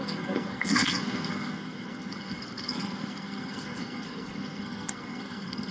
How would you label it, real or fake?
fake